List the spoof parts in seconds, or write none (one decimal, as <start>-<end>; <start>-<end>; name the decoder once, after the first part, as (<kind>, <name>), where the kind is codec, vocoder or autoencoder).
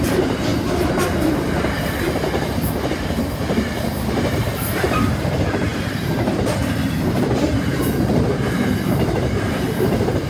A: 0.0-0.5 (vocoder, BigVGAN v2); 3.0-10.3